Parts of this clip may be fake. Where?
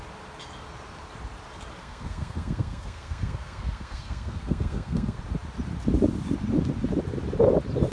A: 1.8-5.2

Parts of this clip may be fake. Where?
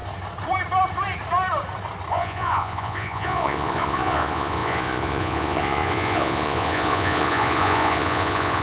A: 2.1-8.6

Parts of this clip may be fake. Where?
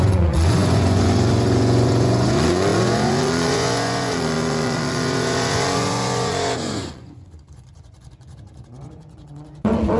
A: 0.0-10.0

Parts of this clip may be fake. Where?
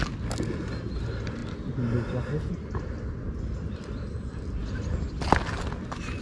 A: none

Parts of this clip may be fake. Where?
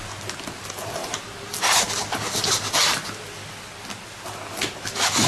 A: none